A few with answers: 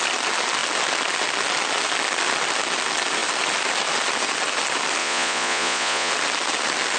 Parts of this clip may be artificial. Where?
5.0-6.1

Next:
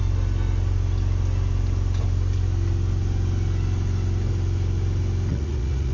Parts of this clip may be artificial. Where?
5.3-5.9